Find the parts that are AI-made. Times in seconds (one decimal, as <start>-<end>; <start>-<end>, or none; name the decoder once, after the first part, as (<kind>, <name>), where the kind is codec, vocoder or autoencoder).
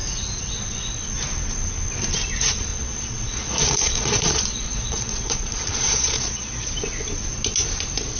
2.7-6.7 (vocoder, Vocos)